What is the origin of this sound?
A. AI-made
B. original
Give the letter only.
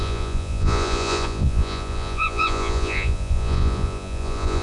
A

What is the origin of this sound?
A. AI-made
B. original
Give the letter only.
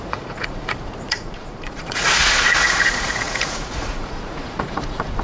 A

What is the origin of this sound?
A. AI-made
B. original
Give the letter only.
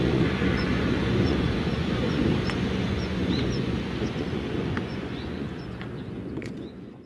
A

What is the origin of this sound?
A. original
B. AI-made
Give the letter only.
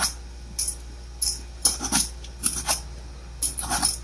A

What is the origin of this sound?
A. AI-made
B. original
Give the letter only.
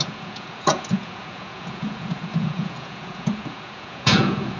A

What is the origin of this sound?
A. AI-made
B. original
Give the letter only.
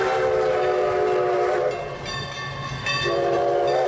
B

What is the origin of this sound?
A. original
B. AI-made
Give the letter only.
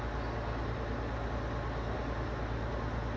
A